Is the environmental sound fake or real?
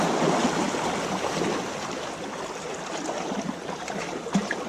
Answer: real